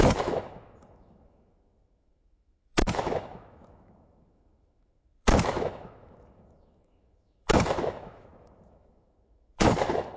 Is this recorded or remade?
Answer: remade